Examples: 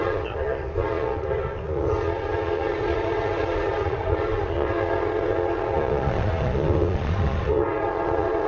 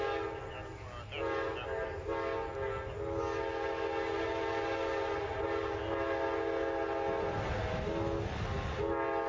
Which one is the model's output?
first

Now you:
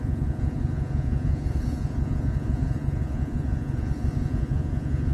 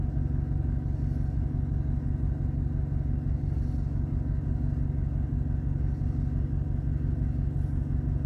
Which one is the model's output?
first